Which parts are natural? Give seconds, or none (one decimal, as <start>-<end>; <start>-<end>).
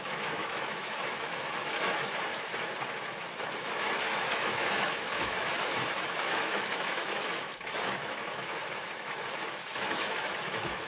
2.3-3.2